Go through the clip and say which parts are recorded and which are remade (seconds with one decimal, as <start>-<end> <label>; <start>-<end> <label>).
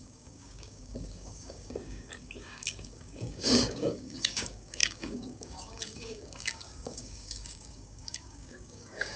0.0-9.2 remade